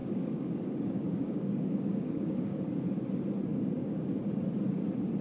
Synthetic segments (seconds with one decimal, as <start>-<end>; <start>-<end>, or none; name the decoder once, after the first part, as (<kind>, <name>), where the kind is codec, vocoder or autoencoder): 0.0-2.6 (codec, DAC); 3.5-4.1